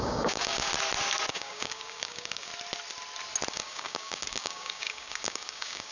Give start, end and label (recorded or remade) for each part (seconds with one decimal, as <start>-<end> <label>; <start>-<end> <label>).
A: 0.0-0.7 remade; 0.7-1.3 recorded; 1.3-2.5 remade; 2.5-3.5 recorded; 3.5-5.9 remade